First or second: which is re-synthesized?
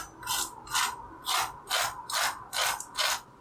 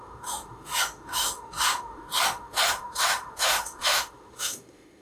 second